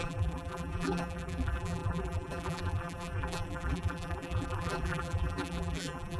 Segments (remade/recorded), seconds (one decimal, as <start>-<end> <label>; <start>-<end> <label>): 0.0-6.2 remade